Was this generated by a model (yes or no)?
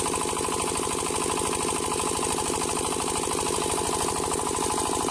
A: no